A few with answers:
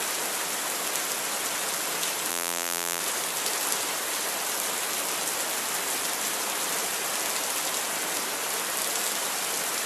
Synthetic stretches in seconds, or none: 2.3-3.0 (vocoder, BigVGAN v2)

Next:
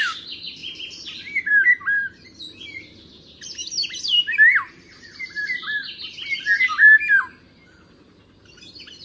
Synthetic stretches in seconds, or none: none

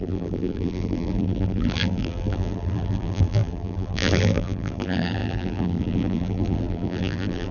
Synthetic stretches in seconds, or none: 0.0-7.5 (vocoder, BigVGAN v2)

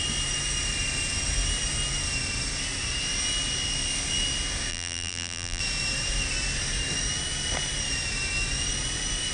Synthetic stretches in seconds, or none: 4.7-5.6 (vocoder, BigVGAN v2)